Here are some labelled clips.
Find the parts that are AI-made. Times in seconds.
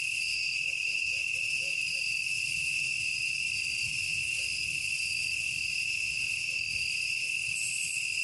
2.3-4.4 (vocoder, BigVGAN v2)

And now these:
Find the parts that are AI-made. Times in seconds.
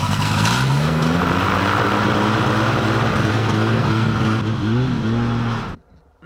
0.0-1.2 (codec, SNAC); 3.3-4.4